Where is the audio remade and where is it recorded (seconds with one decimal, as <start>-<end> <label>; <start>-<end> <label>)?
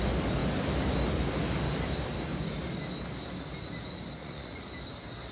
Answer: 0.0-4.2 recorded; 4.2-4.7 remade; 4.7-5.3 recorded